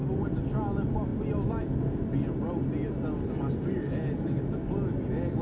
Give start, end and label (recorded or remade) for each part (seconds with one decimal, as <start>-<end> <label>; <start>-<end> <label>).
0.0-5.4 recorded